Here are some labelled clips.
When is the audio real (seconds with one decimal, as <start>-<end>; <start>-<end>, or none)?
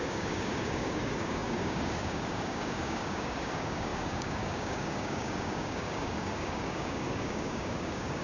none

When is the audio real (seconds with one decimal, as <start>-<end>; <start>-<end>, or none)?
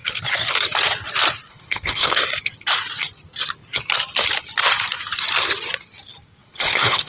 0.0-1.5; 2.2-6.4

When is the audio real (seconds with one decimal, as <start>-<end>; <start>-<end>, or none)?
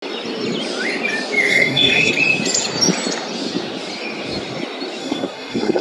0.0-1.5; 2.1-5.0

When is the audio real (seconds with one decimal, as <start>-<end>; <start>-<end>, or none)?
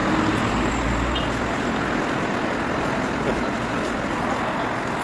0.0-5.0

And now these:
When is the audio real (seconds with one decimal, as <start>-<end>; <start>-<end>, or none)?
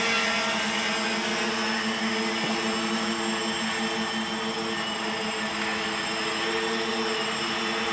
0.0-7.9